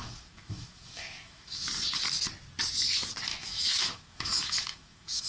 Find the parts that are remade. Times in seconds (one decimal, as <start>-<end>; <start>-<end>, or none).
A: 0.0-1.7; 3.3-5.3